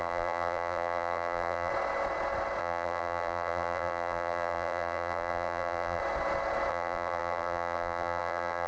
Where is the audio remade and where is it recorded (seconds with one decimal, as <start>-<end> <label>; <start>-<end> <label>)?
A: 0.0-1.7 remade; 1.7-2.6 recorded; 2.6-6.0 remade; 6.0-6.7 recorded; 6.7-8.7 remade